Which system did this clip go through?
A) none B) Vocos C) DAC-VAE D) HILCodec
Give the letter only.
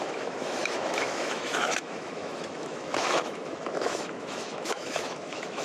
C